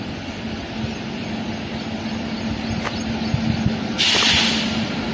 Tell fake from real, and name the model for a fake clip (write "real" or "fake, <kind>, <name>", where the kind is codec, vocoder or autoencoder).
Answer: real